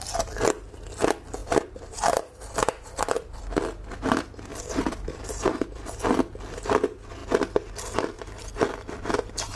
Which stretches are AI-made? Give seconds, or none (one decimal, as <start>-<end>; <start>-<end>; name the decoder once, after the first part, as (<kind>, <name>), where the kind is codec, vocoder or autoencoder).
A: 1.4-3.4 (vocoder, BigVGAN v2); 4.5-6.0